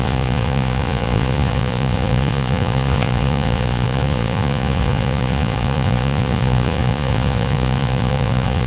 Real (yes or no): no